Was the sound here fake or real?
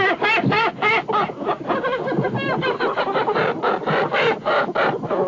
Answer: real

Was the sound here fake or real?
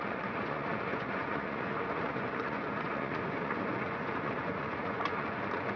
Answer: fake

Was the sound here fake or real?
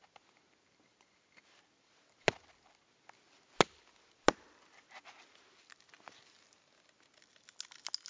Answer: real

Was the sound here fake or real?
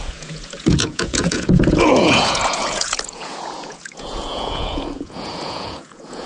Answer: fake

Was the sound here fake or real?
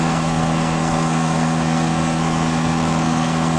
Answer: fake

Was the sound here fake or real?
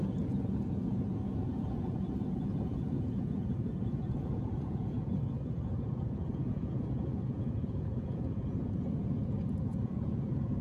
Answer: fake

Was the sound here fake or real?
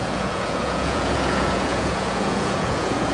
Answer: fake